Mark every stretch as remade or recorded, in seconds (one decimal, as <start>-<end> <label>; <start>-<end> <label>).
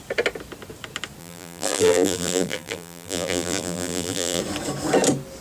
0.0-1.2 recorded; 1.2-4.4 remade; 4.4-5.4 recorded